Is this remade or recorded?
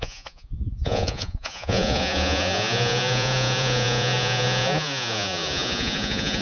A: remade